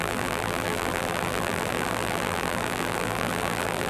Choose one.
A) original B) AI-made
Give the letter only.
B